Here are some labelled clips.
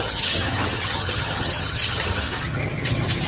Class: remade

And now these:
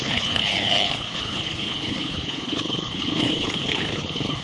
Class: remade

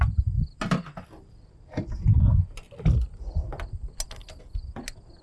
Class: recorded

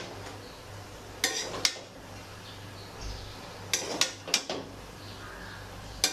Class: recorded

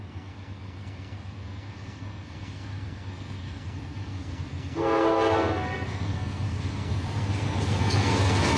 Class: remade